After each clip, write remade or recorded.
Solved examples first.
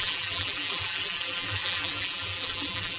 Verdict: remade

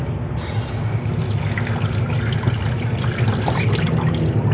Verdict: recorded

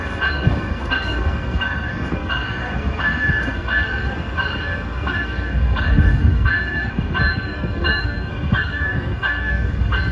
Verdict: remade